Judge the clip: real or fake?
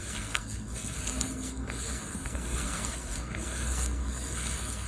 fake